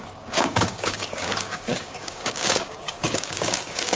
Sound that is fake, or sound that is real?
fake